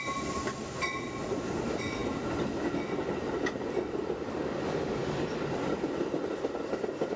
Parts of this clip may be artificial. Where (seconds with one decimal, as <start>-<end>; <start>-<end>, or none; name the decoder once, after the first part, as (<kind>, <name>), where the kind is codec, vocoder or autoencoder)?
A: 0.0-2.0 (vocoder, BigVGAN v2); 4.6-7.2